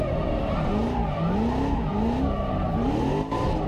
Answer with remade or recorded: recorded